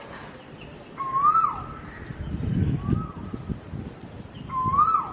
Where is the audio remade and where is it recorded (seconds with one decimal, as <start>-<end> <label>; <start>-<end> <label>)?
0.0-5.1 recorded